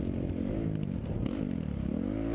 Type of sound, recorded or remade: recorded